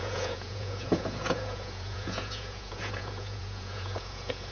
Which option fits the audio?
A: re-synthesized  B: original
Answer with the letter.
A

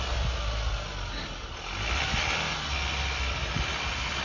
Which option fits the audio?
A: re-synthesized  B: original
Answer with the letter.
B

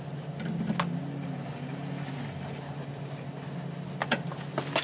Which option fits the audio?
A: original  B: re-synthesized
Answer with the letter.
A